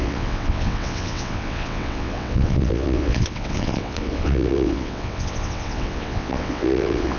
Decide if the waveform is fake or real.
fake